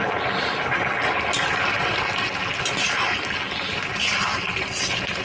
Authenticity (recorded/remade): recorded